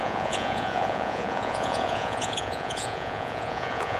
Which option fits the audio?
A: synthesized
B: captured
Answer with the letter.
A